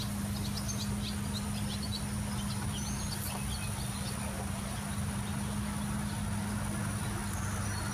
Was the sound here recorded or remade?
recorded